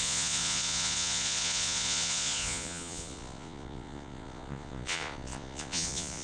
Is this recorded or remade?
remade